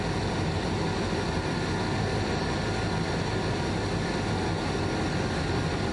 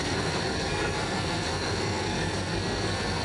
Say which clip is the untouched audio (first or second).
first